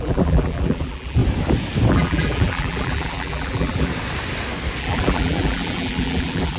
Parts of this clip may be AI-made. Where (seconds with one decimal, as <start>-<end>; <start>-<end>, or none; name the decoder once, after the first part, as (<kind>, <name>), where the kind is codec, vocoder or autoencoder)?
0.0-1.2 (vocoder, BigVGAN v2); 1.9-3.9; 4.8-6.6